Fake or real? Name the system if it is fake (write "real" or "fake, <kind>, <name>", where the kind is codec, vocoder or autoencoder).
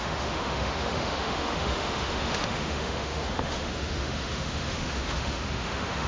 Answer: fake, autoencoder, DAC-VAE